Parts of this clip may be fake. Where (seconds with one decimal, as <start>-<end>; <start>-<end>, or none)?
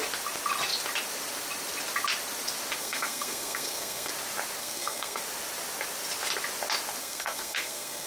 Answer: 2.8-4.1; 4.6-5.2; 7.0-8.1